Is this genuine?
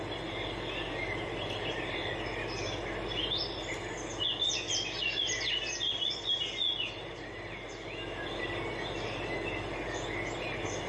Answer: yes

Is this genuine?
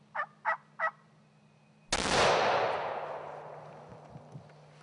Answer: yes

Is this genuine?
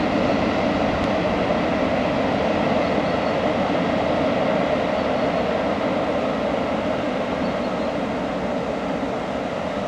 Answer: yes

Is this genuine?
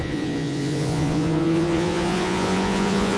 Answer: no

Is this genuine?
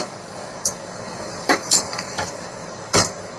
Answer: no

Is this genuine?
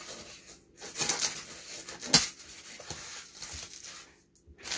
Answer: yes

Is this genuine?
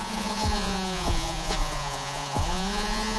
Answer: no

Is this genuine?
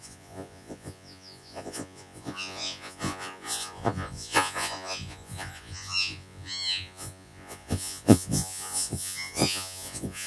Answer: no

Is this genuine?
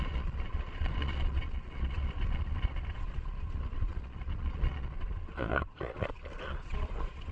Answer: no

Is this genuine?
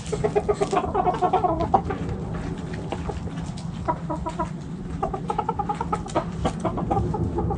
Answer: yes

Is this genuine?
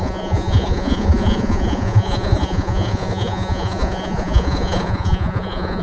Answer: no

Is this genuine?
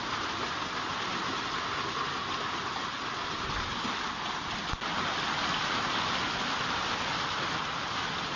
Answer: yes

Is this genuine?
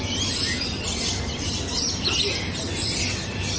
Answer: yes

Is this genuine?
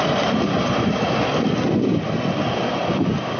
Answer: yes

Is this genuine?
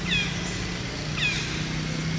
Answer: yes